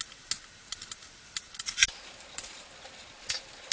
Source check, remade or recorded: recorded